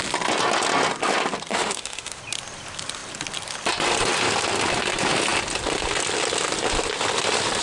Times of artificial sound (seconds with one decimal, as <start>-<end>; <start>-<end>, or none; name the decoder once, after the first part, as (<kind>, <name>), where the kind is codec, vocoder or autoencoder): 1.5-2.2 (autoencoder, DAC-VAE)